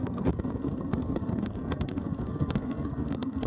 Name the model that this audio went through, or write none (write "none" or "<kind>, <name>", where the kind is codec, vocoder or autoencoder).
codec, SNAC